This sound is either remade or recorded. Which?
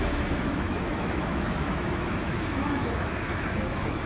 remade